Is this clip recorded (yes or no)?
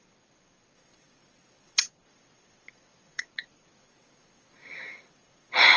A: no